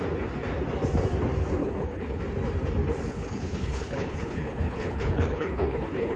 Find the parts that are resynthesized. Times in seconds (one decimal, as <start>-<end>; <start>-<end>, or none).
1.6-2.2; 3.1-6.2